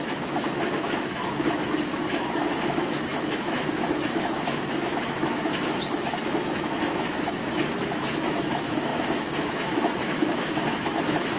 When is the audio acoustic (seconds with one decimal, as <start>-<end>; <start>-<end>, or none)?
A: none